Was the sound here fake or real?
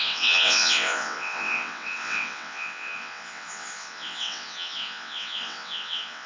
fake